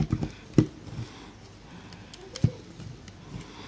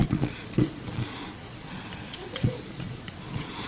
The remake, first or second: second